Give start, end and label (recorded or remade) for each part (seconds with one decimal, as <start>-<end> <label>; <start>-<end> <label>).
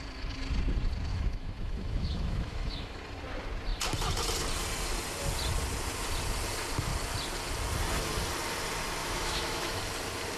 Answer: 0.0-1.1 recorded; 1.1-3.0 remade; 3.0-9.0 recorded; 9.0-9.8 remade; 9.8-10.4 recorded